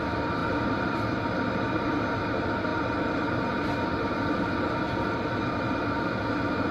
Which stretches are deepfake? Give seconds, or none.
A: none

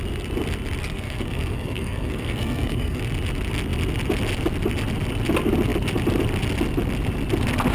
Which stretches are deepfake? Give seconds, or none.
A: 0.8-3.0

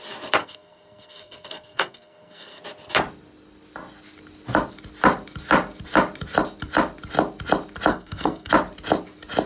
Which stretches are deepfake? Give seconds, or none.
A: 0.4-2.6; 7.9-8.5

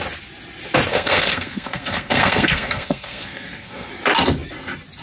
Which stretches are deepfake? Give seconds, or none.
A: 0.9-3.9

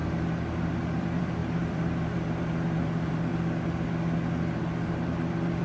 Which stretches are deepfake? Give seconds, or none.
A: 0.7-3.3; 4.8-5.6

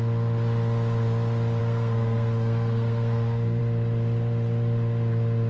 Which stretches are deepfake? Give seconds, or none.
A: 1.6-3.6

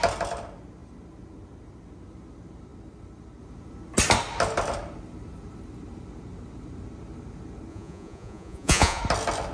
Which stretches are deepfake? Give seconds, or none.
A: 7.7-9.0